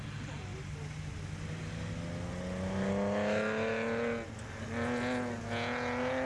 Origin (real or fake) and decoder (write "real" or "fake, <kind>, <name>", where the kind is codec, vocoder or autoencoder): real